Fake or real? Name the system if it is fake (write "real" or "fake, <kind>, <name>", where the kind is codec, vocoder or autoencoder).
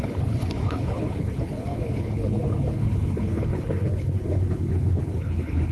fake, codec, HILCodec